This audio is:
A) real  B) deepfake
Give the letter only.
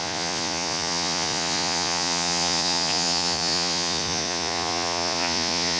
B